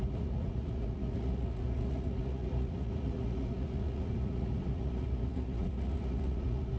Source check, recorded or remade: remade